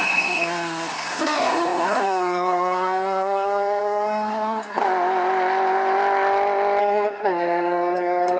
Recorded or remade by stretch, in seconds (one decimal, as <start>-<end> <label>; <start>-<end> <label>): 0.0-4.8 remade; 4.8-6.8 recorded; 6.8-8.4 remade